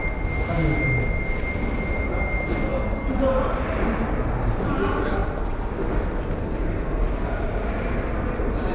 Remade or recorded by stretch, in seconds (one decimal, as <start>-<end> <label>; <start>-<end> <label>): 0.0-8.7 recorded